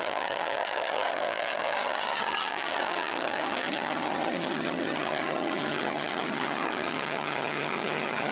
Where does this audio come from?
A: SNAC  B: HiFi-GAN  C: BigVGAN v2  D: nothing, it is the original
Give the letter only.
B